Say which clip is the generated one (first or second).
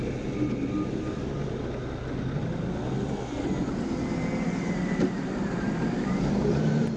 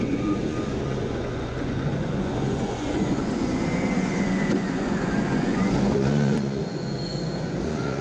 second